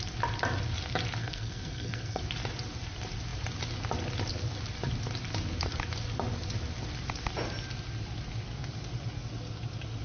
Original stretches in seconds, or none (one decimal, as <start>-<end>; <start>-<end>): 0.0-1.2; 2.2-10.0